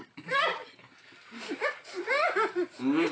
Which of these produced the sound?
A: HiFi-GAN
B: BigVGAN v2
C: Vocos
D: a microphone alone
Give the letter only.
D